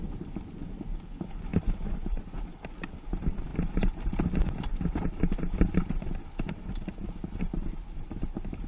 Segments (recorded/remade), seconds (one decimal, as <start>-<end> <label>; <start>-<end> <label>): 0.0-8.7 recorded